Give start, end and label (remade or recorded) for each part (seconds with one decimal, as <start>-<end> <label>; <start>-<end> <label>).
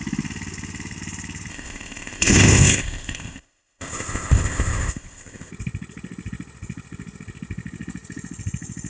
0.0-1.5 recorded; 1.5-5.5 remade; 5.5-8.9 recorded